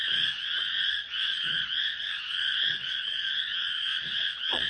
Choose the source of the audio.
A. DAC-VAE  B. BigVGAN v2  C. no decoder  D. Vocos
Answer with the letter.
D